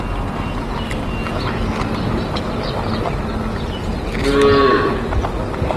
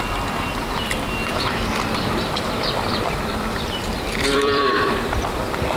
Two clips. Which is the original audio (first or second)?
first